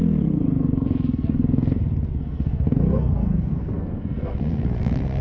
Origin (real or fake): fake